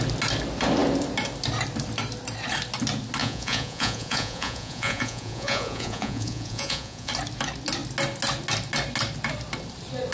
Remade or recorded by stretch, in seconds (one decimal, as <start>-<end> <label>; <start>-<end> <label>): 0.0-3.2 recorded; 3.2-7.1 remade; 7.1-10.1 recorded